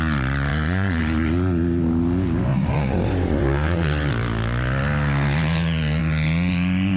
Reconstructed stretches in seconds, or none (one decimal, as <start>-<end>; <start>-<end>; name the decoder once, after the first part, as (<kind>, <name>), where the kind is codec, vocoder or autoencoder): 0.5-1.0 (vocoder, Vocos); 2.5-4.1